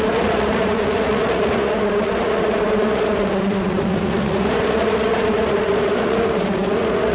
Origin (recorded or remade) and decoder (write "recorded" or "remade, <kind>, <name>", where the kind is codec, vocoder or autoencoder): remade, vocoder, Vocos